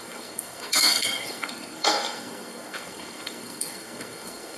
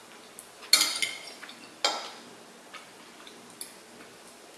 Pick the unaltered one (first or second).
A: second